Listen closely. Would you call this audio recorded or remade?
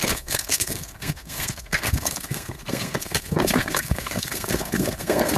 remade